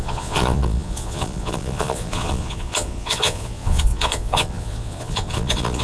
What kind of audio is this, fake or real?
fake